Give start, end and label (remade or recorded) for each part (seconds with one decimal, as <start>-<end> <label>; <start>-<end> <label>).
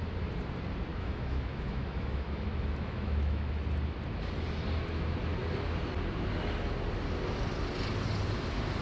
0.0-0.9 recorded; 0.9-3.6 remade; 3.6-8.8 recorded